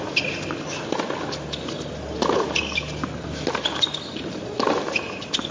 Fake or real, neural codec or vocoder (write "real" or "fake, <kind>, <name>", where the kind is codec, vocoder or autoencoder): real